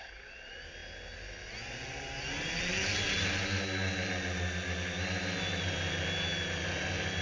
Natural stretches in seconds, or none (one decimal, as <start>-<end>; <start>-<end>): 0.0-7.2